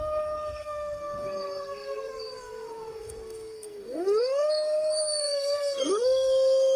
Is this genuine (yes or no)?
no